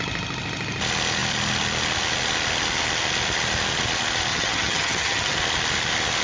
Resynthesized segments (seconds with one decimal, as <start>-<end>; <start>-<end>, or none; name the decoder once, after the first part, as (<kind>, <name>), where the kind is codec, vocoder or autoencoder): 4.3-5.3 (vocoder, HiFi-GAN)